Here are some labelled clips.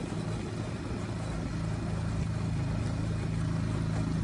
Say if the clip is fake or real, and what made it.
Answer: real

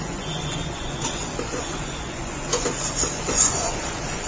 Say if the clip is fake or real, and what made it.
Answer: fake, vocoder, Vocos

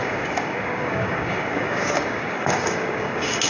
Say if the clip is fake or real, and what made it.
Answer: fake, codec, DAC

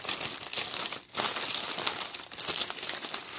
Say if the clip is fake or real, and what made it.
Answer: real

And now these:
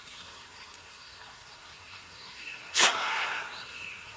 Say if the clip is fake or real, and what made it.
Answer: fake, codec, SNAC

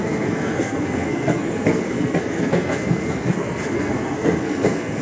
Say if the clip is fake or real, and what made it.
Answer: fake, codec, SNAC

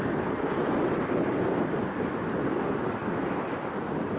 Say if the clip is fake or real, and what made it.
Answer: real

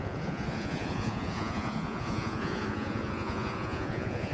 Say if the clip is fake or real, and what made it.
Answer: fake, vocoder, Vocos